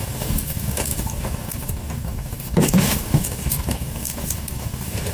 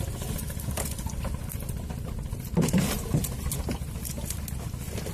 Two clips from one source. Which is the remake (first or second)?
first